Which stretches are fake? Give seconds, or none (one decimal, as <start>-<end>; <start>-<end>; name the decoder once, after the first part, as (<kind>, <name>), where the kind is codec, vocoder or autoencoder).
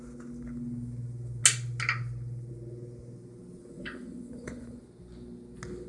3.6-4.8 (vocoder, Vocos)